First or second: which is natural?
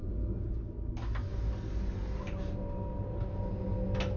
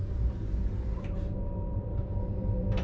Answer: first